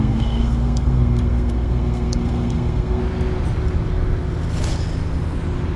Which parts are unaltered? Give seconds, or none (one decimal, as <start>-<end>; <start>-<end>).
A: 3.0-5.8